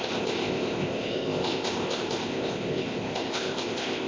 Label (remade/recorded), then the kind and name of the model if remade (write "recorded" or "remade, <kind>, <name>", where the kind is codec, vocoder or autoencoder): remade, codec, ZipCodec